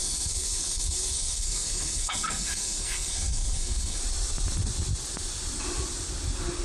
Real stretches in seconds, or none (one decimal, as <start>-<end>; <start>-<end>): 4.0-6.6